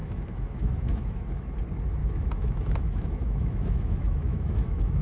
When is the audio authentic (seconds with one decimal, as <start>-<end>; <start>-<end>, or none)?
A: 1.5-2.0